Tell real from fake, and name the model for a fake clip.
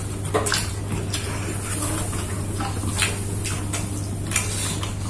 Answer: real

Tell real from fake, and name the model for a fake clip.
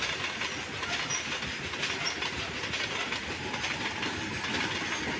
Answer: real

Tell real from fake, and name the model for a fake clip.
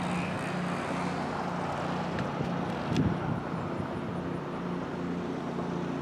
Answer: real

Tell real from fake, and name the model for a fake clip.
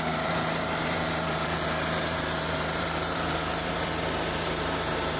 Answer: fake, vocoder, BigVGAN v2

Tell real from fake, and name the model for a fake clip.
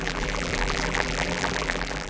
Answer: fake, vocoder, BigVGAN v2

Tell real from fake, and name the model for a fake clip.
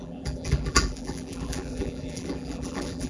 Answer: fake, vocoder, BigVGAN v2